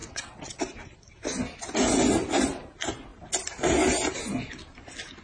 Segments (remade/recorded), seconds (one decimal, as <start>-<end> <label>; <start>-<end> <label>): 0.0-0.6 remade; 0.6-5.2 recorded

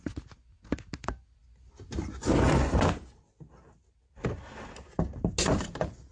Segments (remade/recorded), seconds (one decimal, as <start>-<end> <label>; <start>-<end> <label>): 0.0-6.1 recorded